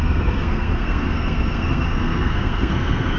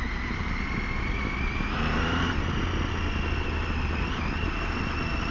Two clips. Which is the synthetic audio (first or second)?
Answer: first